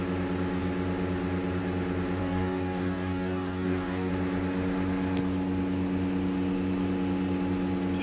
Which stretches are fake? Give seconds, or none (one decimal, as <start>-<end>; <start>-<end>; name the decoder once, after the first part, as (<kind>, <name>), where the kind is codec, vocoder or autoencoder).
2.2-4.1 (codec, DAC)